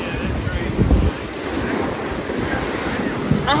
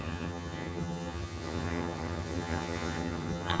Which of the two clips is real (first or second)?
first